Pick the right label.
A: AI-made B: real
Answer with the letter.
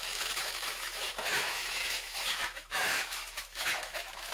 A